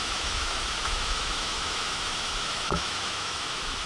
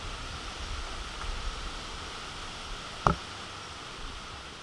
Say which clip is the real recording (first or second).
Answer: second